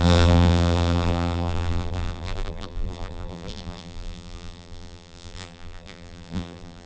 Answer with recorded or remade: remade